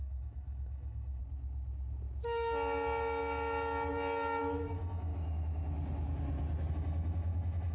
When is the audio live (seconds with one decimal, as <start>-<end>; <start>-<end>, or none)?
1.2-4.4; 5.1-6.7